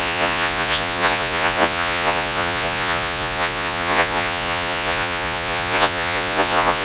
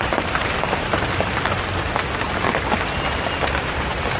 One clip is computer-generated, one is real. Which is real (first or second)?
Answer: second